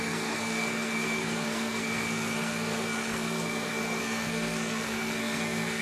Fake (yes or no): yes